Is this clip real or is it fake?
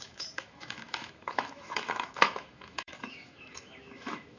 fake